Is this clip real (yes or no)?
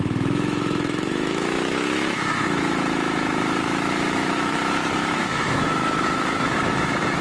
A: no